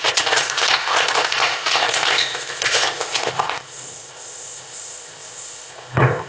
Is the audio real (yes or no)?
no